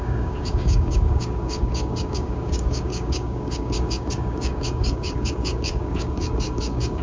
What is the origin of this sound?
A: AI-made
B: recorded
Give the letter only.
A